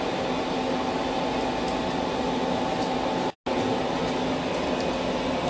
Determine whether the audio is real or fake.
real